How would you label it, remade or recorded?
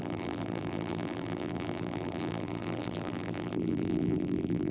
remade